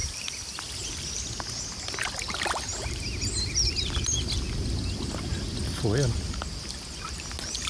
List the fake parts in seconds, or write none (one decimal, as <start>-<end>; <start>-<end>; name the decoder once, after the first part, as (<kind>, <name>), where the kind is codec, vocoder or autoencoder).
0.0-0.6 (vocoder, BigVGAN v2)